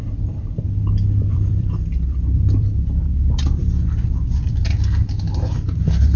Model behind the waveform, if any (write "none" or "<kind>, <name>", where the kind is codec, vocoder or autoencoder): vocoder, BigVGAN v2